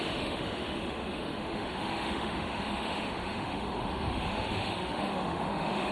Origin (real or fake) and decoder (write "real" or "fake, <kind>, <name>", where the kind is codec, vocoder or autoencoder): fake, autoencoder, DAC-VAE